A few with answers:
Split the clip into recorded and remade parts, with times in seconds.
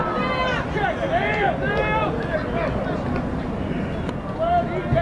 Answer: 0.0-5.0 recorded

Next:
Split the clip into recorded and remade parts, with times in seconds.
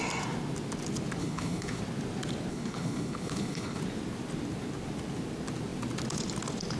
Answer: 0.0-1.2 recorded; 1.2-1.8 remade; 1.8-2.5 recorded; 2.5-3.8 remade; 3.8-6.8 recorded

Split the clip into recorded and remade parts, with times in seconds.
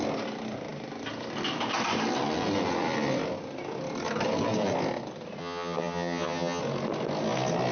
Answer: 0.0-5.4 recorded; 5.4-6.6 remade; 6.6-7.7 recorded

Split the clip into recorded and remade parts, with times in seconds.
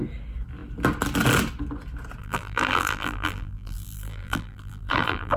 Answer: 0.0-2.2 recorded; 2.2-5.4 remade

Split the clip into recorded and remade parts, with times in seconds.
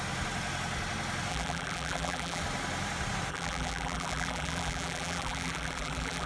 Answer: 0.0-1.3 recorded; 1.3-2.4 remade; 2.4-3.3 recorded; 3.3-6.3 remade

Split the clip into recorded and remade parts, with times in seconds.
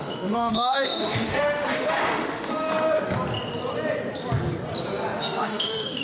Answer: 0.0-2.7 remade; 2.7-5.2 recorded; 5.2-6.0 remade